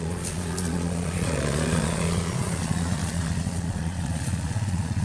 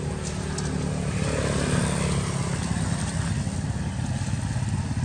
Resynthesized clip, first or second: first